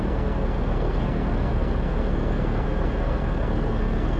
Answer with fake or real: fake